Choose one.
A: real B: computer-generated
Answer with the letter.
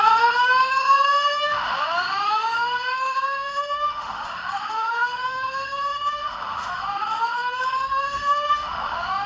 B